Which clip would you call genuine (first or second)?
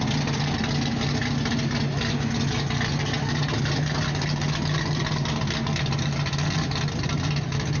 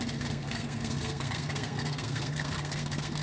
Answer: first